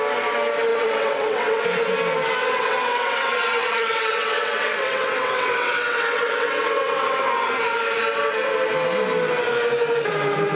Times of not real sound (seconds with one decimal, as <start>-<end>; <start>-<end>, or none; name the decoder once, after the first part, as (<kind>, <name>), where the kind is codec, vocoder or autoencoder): 0.7-1.6 (vocoder, WaveNeXt); 2.4-7.5